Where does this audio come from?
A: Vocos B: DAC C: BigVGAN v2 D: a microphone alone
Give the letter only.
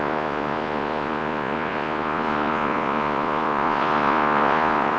A